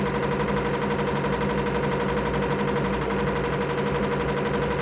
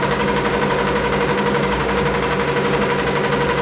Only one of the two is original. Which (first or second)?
first